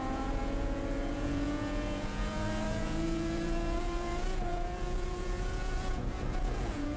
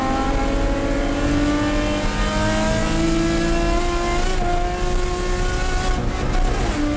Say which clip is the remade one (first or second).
first